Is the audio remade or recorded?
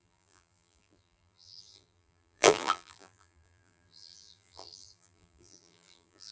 remade